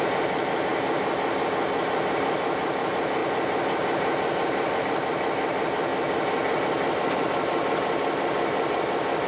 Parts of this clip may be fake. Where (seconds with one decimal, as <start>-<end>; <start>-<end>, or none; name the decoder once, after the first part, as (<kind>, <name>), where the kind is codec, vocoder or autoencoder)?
none